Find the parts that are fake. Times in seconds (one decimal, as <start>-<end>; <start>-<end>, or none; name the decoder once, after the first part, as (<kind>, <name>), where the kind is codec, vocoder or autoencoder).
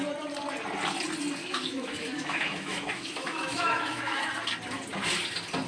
1.4-4.3 (autoencoder, DAC-VAE)